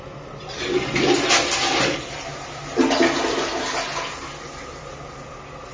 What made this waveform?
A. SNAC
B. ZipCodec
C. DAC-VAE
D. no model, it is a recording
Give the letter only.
D